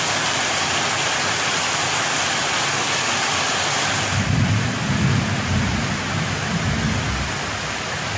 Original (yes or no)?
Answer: yes